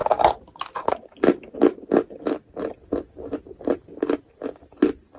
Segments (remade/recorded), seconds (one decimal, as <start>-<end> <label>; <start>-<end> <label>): 0.0-2.8 recorded; 2.8-4.8 remade; 4.8-5.2 recorded